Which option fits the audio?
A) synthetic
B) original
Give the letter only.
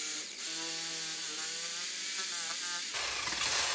B